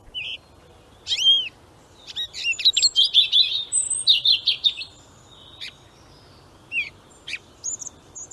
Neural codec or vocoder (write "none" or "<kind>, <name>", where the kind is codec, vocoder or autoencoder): none